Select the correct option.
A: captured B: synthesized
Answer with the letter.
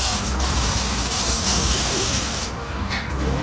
B